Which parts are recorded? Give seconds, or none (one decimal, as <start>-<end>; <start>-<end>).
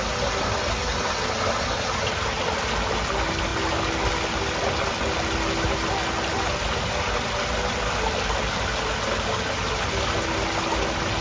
0.0-11.2